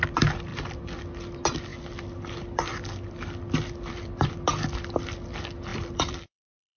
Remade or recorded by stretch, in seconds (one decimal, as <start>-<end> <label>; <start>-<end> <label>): 0.0-0.5 recorded; 0.5-1.0 remade; 1.0-1.7 recorded; 1.7-4.3 remade; 4.3-5.7 recorded; 5.7-6.8 remade